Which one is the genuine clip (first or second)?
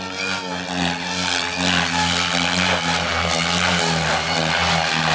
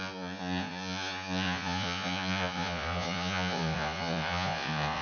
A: first